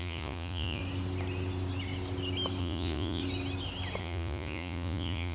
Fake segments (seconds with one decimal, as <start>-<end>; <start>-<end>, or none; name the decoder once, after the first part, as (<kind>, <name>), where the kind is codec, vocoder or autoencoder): 0.0-0.8 (vocoder, Vocos); 2.6-3.2; 4.0-5.3